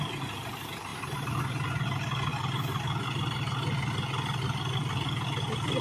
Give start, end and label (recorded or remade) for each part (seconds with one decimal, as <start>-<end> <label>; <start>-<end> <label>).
0.0-0.9 recorded; 0.9-1.4 remade; 1.4-5.8 recorded